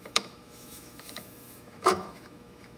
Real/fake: fake